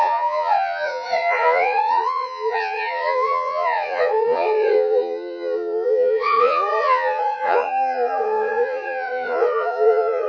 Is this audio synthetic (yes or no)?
yes